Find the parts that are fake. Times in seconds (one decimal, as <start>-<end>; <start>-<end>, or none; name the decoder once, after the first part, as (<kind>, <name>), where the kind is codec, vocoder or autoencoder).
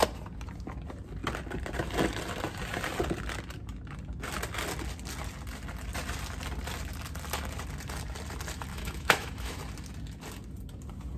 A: 8.7-9.6 (autoencoder, DAC-VAE)